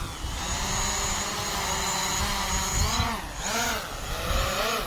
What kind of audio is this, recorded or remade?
recorded